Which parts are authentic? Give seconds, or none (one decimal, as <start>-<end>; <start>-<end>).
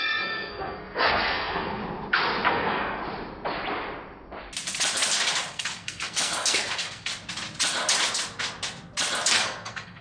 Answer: 1.8-2.5; 3.0-5.5; 7.1-9.3